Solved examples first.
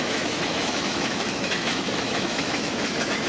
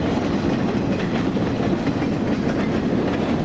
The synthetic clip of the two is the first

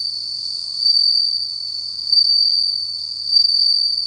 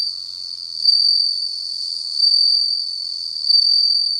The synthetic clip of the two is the first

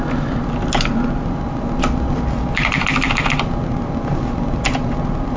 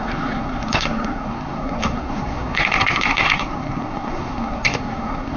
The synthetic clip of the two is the second